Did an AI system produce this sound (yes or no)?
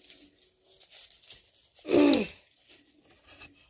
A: no